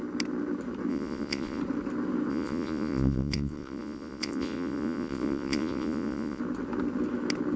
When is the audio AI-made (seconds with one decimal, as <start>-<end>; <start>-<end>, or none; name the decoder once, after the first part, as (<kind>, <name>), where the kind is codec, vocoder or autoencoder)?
0.9-1.6 (vocoder, Vocos); 2.3-6.4